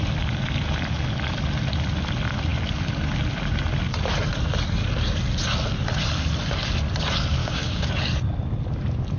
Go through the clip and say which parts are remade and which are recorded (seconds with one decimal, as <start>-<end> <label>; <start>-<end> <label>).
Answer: 0.0-7.4 recorded; 7.4-7.9 remade; 7.9-9.2 recorded